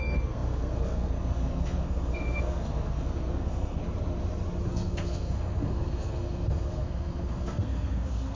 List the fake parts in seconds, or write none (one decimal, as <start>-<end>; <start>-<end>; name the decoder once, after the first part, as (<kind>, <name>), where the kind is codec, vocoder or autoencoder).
0.0-3.8 (codec, SNAC); 4.7-8.3